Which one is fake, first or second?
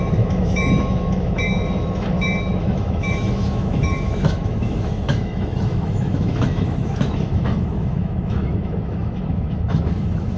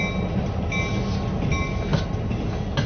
first